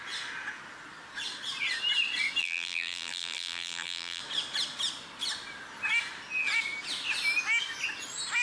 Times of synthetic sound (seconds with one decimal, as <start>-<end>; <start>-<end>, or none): 2.4-4.2